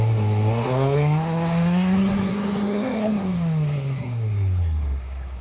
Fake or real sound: fake